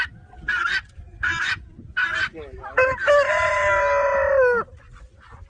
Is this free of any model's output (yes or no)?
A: yes